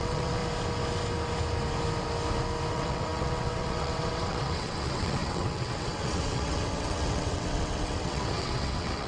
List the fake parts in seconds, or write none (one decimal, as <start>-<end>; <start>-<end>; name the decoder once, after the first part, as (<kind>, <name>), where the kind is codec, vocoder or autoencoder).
0.0-0.4 (vocoder, WaveNeXt); 2.7-9.1